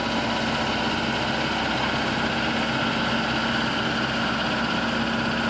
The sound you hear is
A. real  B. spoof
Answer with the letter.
A